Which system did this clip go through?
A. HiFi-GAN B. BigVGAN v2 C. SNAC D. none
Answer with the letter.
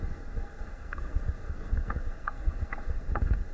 C